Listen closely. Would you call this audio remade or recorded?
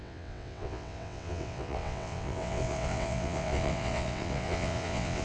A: remade